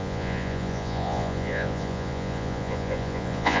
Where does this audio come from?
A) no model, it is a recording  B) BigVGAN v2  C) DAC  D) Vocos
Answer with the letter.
D